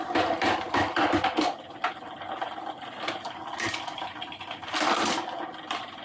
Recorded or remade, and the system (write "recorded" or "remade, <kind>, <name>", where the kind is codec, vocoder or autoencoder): recorded